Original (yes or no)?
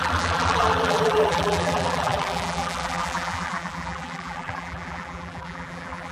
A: no